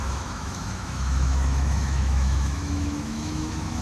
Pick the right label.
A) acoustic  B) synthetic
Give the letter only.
B